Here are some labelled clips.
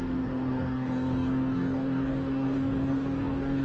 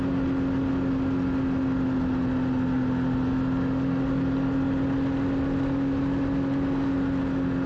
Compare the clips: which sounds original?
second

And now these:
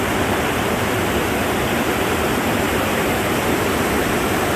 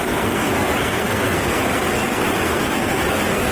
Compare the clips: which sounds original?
first